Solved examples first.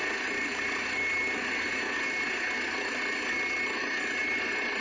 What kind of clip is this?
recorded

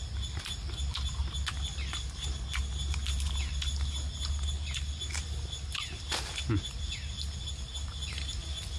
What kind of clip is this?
recorded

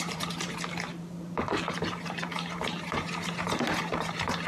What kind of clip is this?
remade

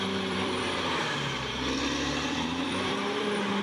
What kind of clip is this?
remade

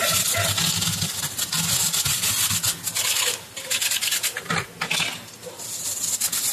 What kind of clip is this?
recorded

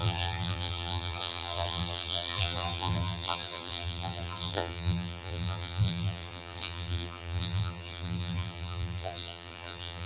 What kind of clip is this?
remade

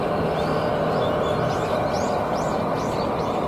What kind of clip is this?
recorded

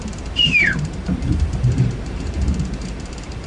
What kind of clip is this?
remade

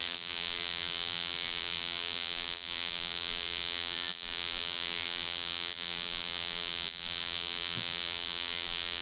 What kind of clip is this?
remade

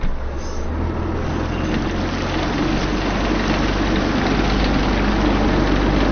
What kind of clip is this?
recorded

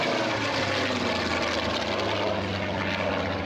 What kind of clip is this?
recorded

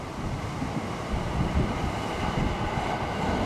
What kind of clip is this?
recorded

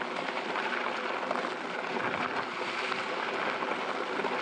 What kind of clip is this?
recorded